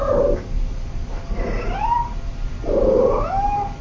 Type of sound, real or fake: real